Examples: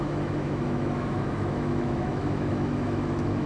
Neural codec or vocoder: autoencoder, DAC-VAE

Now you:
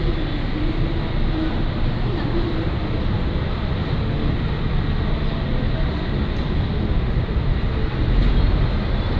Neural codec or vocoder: none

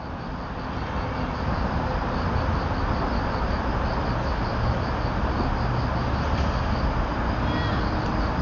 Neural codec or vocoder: none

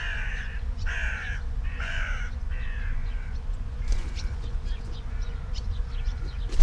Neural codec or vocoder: vocoder, Vocos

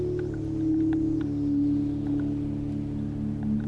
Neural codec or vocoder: none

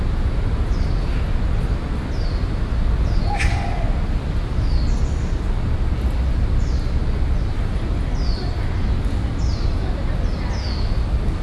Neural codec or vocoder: none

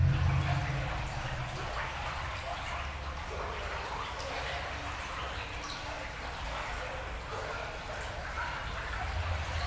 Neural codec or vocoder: none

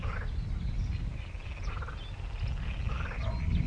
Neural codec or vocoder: none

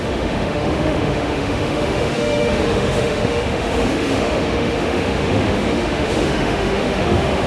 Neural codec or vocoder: autoencoder, DAC-VAE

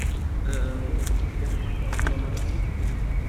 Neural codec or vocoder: none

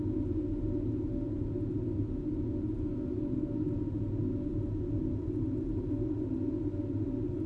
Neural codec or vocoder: none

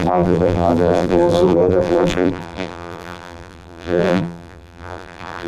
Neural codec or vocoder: vocoder, BigVGAN v2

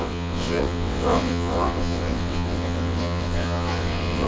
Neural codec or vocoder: vocoder, WaveNeXt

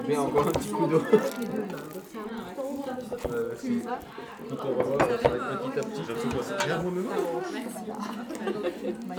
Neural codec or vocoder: none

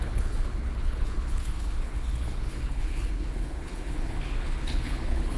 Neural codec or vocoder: codec, HILCodec